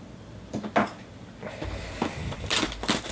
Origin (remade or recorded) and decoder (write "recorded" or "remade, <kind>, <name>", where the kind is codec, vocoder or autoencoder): recorded